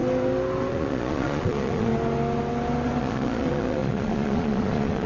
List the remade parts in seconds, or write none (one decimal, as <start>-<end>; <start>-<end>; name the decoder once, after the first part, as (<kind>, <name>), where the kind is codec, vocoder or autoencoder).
0.7-1.9 (vocoder, Vocos); 3.0-5.1